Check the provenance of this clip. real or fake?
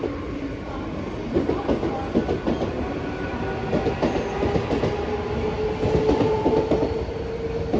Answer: real